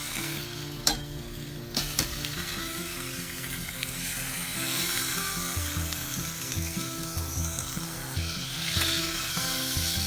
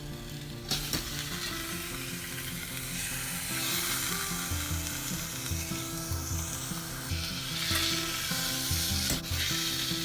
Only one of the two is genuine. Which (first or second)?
second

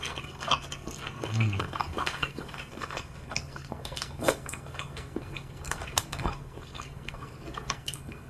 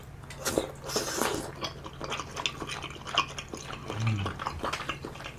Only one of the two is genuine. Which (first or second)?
second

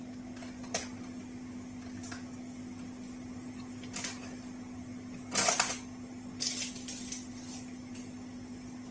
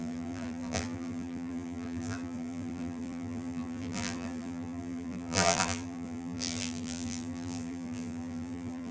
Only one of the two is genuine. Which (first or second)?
first